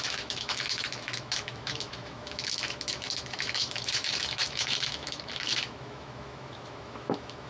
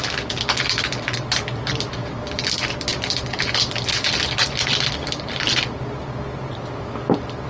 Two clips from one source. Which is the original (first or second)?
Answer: second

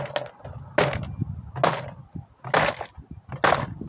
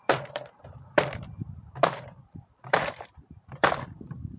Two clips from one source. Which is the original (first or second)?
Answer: first